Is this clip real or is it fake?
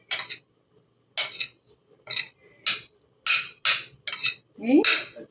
real